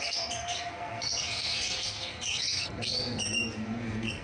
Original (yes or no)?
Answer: no